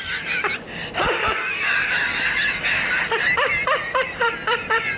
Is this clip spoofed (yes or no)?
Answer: no